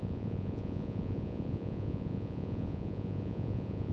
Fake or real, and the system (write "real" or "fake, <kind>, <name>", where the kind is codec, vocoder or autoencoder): fake, vocoder, Vocos